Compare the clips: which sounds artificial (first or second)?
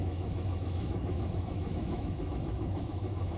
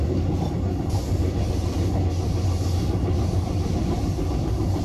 first